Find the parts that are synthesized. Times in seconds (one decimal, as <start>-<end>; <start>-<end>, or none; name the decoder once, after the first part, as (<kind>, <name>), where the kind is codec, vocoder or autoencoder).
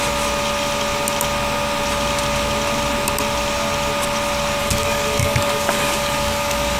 4.6-6.8 (codec, DAC)